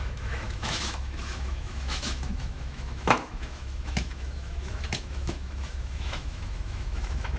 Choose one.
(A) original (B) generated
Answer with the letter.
B